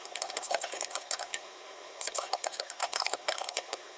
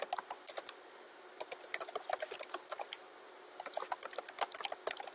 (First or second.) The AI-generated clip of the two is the first